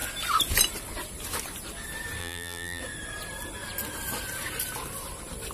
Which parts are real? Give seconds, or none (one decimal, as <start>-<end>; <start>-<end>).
0.0-2.2; 2.8-5.5